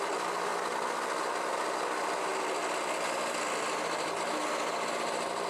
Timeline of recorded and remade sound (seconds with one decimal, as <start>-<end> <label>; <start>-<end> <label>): 0.0-5.5 recorded